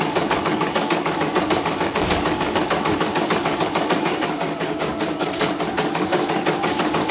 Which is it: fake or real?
fake